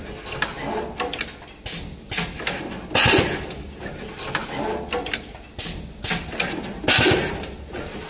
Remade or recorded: recorded